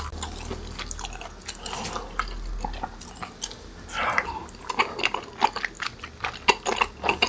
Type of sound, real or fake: real